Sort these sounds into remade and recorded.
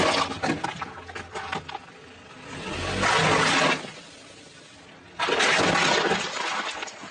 recorded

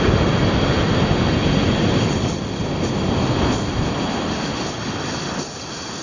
recorded